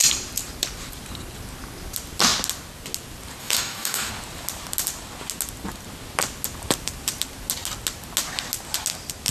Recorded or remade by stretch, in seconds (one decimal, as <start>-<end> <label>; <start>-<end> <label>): 0.0-3.4 recorded; 3.4-4.1 remade; 4.1-9.3 recorded